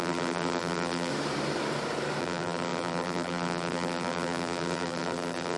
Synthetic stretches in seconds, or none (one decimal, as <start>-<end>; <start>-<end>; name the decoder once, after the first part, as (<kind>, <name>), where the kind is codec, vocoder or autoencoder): 0.0-1.1 (vocoder, BigVGAN v2); 2.2-5.6